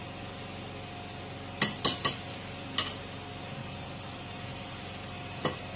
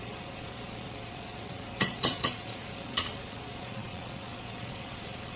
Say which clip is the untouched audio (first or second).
first